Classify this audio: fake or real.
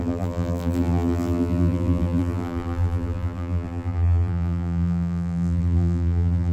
fake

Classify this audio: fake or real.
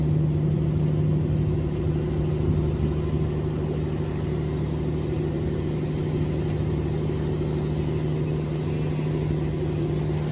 real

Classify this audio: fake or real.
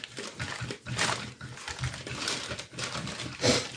real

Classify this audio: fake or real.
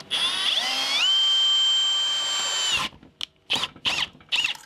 real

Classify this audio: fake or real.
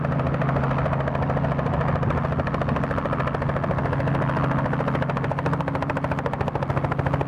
real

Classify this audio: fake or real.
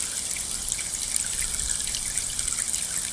fake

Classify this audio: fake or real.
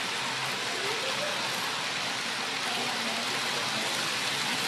real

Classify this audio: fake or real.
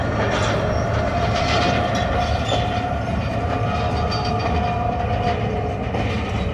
real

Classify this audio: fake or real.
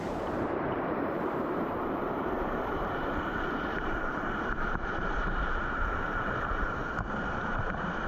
fake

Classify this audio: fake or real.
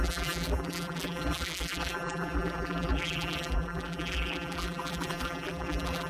fake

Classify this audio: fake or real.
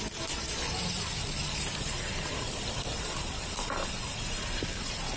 fake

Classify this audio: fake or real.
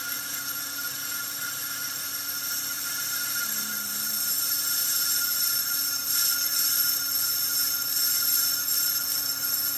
fake